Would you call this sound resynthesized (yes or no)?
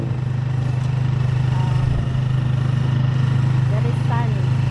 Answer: no